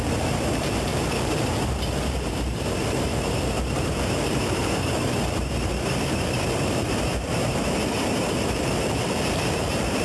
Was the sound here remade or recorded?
remade